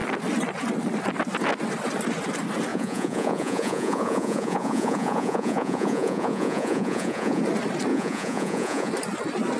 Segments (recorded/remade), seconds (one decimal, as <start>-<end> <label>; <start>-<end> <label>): 0.0-2.7 recorded; 2.7-7.4 remade; 7.4-7.9 recorded; 7.9-8.9 remade; 8.9-9.6 recorded